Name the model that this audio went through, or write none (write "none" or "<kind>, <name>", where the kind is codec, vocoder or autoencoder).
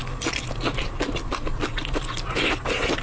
none